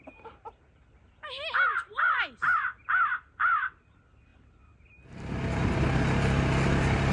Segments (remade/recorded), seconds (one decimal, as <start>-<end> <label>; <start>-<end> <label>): 0.0-7.1 recorded